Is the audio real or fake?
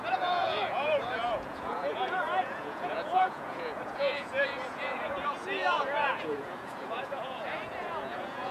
fake